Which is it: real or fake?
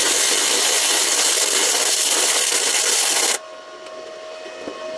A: real